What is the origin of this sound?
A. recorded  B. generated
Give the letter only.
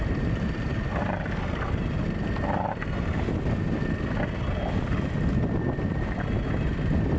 A